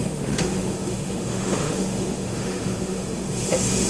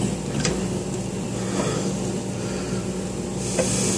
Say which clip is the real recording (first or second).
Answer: second